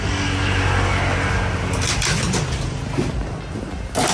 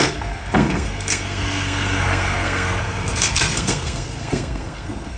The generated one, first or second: second